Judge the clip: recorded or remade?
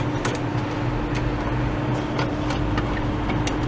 recorded